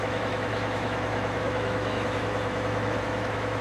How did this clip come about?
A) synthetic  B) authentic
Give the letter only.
A